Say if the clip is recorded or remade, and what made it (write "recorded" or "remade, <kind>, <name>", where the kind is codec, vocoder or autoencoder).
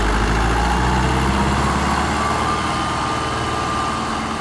recorded